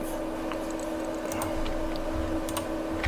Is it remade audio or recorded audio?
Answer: recorded